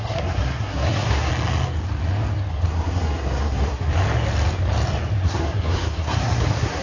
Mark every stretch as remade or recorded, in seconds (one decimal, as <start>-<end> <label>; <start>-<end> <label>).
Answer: 0.0-1.3 remade; 1.3-2.5 recorded; 2.5-3.9 remade; 3.9-5.2 recorded; 5.2-6.8 remade